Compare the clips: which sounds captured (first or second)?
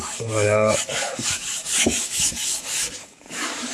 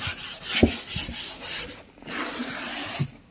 second